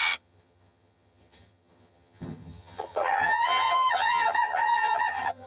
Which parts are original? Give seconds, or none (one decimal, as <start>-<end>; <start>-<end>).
none